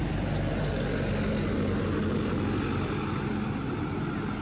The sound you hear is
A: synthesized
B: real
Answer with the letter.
B